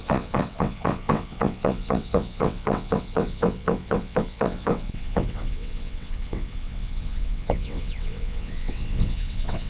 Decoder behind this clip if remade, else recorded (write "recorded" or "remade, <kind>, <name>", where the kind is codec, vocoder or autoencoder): remade, vocoder, WaveNeXt